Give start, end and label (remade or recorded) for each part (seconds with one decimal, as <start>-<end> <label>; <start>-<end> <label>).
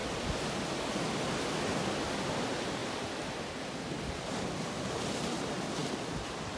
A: 0.0-6.6 recorded